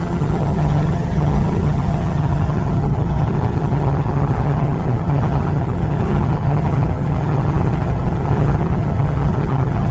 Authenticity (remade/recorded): remade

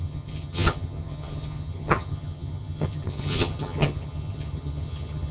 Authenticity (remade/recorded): remade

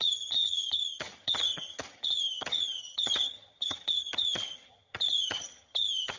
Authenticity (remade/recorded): remade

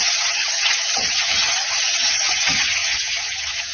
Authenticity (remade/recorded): remade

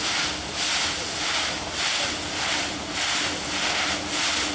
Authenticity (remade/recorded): recorded